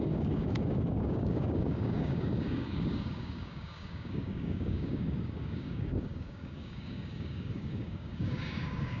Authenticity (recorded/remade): remade